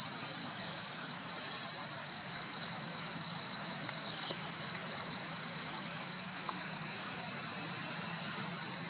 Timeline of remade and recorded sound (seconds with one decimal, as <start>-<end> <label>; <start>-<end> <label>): 0.0-0.4 recorded; 0.4-1.3 remade; 1.3-2.0 recorded; 2.0-7.2 remade; 7.2-8.9 recorded